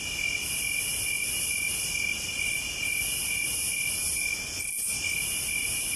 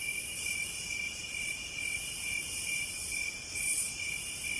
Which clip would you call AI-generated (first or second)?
second